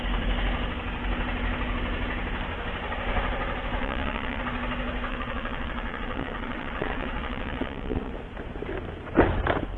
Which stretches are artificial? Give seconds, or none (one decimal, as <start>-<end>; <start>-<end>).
3.8-4.4; 5.1-8.1

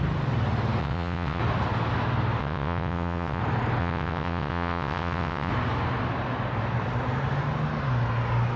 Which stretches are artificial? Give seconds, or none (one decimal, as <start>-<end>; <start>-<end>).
0.8-1.4; 2.4-3.4; 3.8-5.5

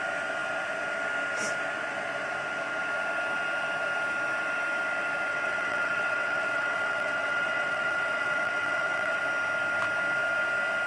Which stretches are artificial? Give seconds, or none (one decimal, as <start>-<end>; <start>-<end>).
5.3-9.2

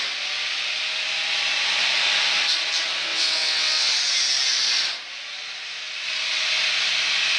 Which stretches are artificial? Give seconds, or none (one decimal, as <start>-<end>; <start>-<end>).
3.1-3.9

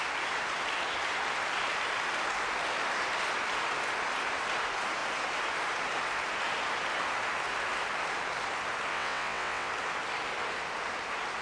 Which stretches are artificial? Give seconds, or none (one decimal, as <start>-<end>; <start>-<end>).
8.9-9.7